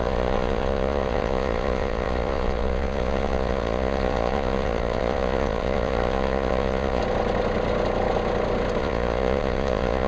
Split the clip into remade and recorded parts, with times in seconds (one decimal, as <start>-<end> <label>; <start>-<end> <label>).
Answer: 0.0-7.0 remade; 7.0-8.8 recorded; 8.8-10.1 remade